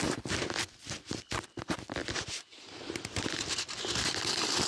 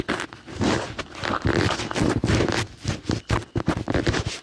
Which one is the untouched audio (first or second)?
second